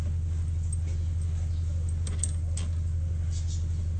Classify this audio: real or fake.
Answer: real